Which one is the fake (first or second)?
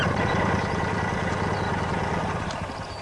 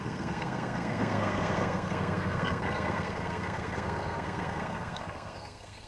second